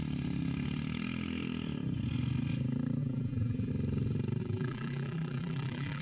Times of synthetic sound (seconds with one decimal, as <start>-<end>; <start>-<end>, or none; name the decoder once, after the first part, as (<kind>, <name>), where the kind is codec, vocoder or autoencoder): 3.0-3.7 (vocoder, BigVGAN v2); 4.4-6.0